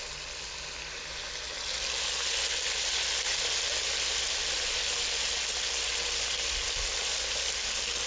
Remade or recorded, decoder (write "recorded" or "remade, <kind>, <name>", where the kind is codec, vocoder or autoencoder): recorded